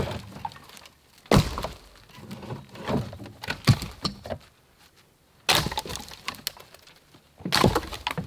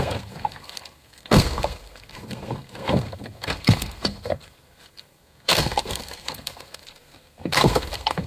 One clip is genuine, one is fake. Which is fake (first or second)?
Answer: second